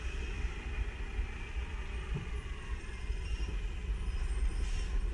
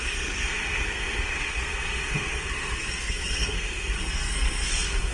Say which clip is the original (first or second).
first